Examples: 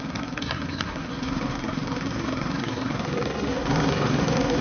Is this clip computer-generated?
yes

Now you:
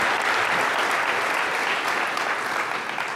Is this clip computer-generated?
no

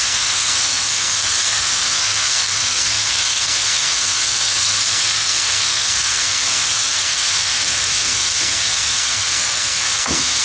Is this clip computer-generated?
yes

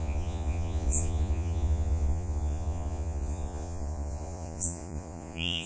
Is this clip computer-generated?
yes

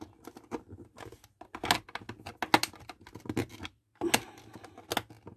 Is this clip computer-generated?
no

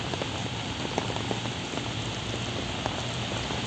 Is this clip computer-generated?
no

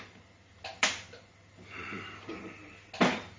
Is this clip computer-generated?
no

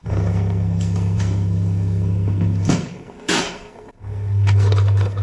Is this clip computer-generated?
yes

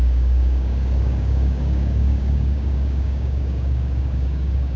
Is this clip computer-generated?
yes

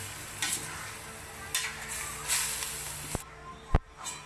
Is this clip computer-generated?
no